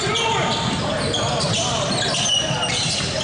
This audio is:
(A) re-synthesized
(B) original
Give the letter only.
B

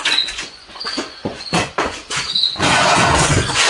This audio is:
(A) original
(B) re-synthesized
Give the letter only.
B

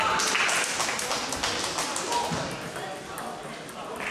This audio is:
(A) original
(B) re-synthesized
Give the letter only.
A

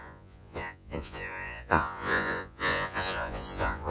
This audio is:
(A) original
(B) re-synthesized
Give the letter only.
B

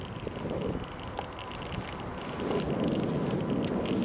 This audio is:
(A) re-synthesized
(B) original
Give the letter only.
B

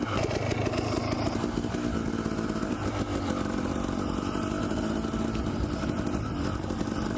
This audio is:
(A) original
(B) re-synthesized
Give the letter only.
A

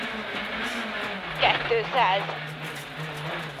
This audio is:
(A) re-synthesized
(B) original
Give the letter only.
B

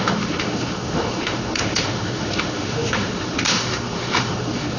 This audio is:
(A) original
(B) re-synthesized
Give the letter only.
B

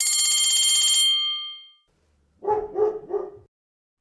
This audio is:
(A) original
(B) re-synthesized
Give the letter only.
A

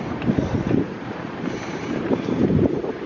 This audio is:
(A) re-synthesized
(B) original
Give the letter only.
A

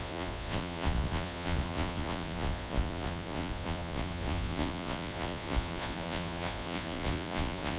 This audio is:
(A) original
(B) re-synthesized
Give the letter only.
B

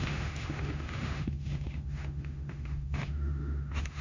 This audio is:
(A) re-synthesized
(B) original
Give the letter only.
A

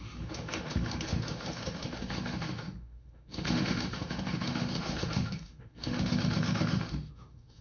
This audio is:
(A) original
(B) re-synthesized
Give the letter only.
B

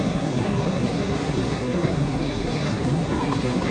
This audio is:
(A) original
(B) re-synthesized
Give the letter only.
B